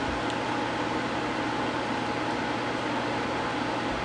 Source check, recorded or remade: recorded